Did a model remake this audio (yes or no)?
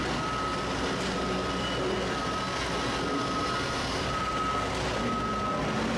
no